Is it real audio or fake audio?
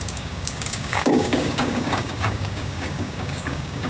fake